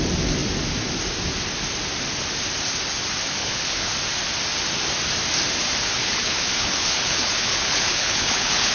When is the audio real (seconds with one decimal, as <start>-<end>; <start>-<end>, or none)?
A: 0.0-3.4; 3.9-5.8